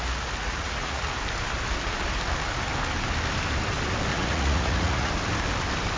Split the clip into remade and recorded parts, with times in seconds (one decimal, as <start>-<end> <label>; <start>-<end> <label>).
0.0-0.4 recorded; 0.4-1.1 remade; 1.1-4.1 recorded; 4.1-5.1 remade; 5.1-6.0 recorded